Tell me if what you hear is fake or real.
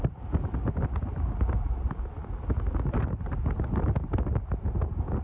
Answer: real